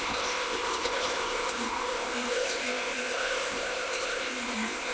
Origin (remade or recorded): remade